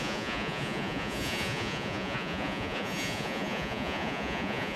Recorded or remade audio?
remade